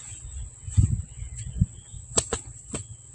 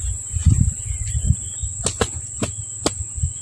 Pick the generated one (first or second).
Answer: first